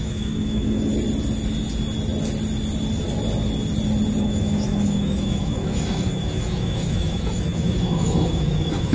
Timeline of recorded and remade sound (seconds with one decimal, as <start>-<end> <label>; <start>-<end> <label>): 0.0-0.9 remade; 0.9-4.2 recorded; 4.2-8.9 remade